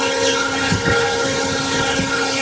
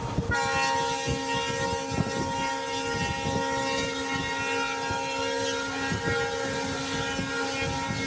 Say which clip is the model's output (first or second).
first